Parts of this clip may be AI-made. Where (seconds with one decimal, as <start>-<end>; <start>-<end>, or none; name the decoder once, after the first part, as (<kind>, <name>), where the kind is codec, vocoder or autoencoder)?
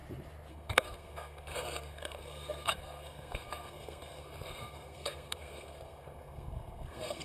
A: 0.5-7.2 (codec, SNAC)